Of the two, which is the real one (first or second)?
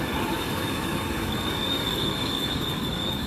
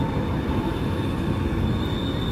second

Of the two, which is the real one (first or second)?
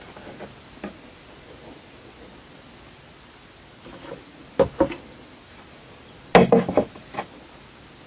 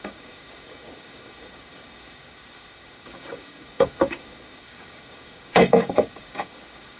first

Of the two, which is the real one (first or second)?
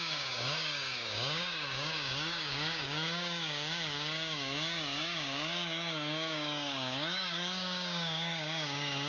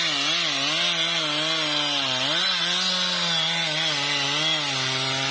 second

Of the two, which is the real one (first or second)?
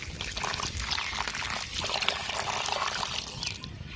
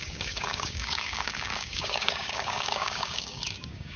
first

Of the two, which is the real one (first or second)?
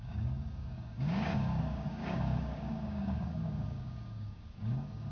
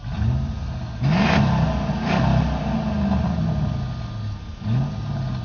second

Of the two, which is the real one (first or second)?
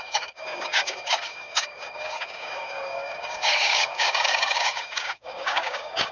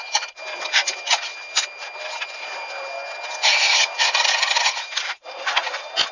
second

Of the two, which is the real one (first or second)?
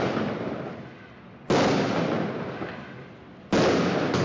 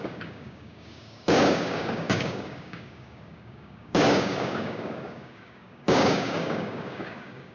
first